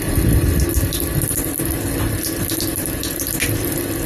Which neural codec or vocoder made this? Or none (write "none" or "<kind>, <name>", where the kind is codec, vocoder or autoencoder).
none